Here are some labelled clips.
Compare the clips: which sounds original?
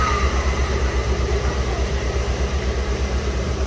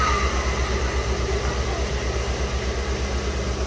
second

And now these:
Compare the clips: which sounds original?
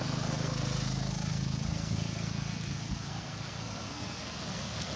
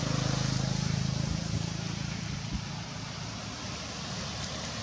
second